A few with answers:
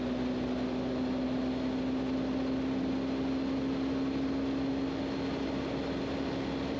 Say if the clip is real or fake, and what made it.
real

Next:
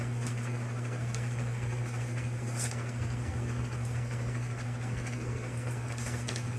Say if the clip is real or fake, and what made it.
fake, codec, SNAC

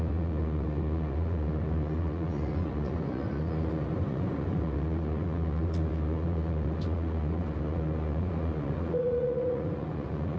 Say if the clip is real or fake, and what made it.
fake, vocoder, Vocos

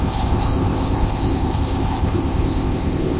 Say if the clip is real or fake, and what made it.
fake, codec, ZipCodec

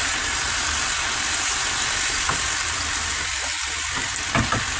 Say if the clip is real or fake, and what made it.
real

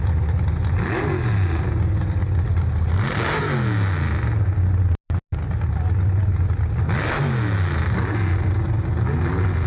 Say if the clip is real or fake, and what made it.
real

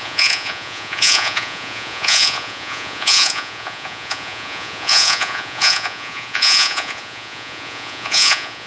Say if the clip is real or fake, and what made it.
fake, vocoder, Vocos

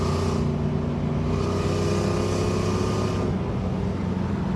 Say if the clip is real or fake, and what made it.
real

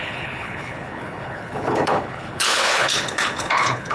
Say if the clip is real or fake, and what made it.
fake, codec, HILCodec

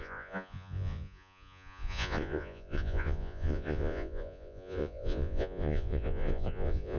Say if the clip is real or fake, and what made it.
fake, vocoder, Vocos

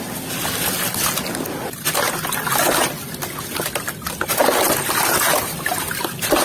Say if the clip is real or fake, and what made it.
real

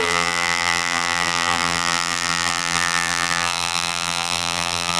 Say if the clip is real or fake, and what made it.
fake, vocoder, BigVGAN v2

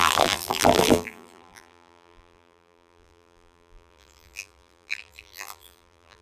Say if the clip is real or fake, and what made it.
fake, vocoder, BigVGAN v2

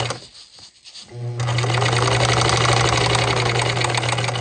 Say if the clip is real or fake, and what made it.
real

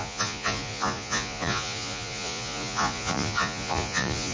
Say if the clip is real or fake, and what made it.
fake, vocoder, Vocos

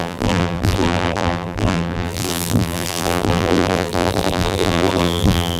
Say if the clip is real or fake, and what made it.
fake, vocoder, BigVGAN v2